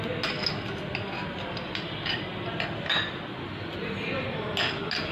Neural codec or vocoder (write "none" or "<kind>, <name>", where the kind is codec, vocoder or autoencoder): none